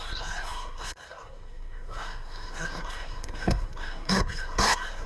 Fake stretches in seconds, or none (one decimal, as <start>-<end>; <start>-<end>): 0.0-5.1